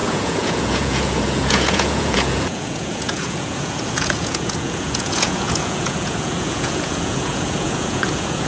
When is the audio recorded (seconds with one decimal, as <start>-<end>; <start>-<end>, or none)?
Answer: none